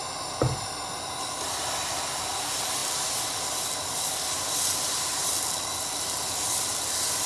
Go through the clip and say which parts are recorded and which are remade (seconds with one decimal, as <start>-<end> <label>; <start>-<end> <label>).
0.0-7.3 recorded